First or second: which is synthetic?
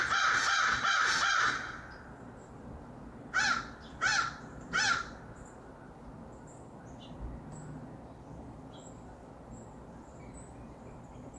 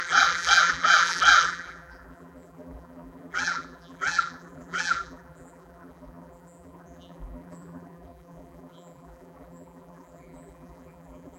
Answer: second